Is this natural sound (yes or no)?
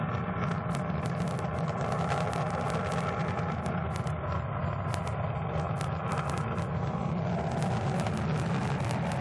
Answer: yes